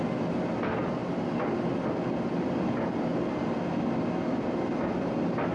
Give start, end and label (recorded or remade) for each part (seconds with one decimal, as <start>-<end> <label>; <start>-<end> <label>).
0.0-5.5 recorded